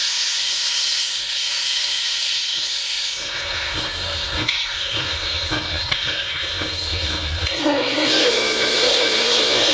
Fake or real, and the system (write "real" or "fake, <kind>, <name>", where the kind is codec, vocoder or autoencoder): fake, codec, SNAC